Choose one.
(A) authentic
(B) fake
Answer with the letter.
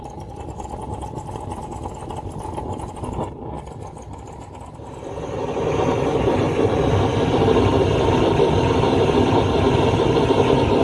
A